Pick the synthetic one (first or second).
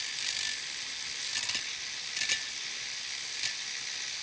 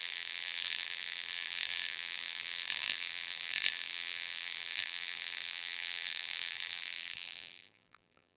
second